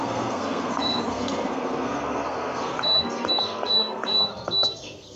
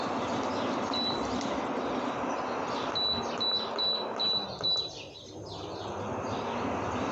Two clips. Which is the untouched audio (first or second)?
second